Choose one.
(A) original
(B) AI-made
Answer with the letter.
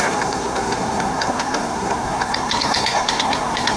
B